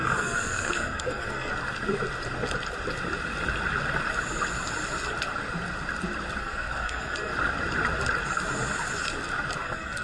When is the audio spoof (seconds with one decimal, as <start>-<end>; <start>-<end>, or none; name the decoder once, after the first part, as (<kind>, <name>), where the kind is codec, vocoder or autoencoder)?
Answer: 0.0-1.5 (codec, SNAC); 6.4-7.3; 9.6-10.0